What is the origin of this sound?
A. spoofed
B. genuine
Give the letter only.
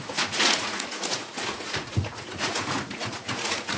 A